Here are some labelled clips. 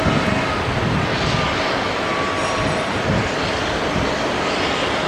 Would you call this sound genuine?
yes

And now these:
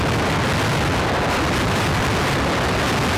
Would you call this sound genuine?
yes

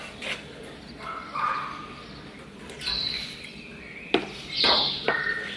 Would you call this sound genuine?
yes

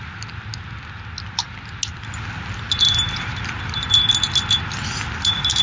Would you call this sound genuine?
yes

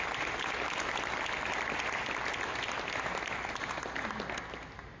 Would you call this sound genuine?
yes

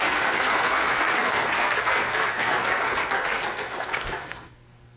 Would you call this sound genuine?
no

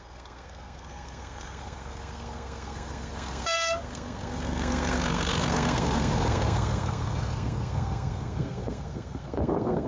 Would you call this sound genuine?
no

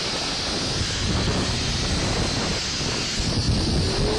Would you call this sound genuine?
yes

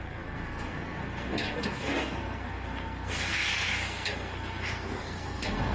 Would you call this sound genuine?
no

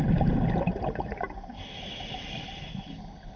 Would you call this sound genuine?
yes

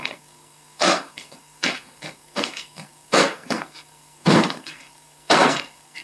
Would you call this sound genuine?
no